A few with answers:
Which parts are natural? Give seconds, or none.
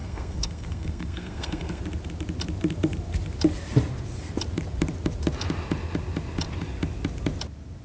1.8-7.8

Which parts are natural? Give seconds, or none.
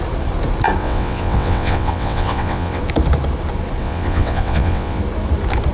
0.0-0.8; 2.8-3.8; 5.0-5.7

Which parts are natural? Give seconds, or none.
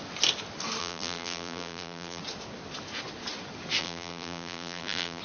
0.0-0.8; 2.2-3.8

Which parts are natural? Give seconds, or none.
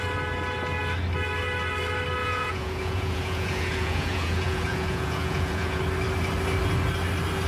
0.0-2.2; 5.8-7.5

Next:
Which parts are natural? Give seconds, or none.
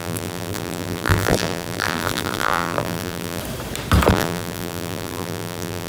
3.4-4.1